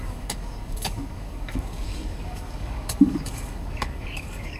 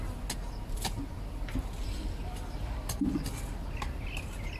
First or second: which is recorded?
second